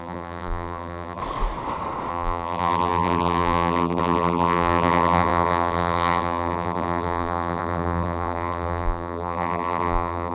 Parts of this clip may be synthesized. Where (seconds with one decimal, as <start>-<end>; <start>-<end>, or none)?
0.0-1.2; 2.1-10.3